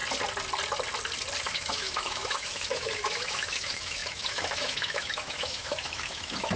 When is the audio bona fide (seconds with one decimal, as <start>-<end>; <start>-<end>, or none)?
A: 0.0-1.4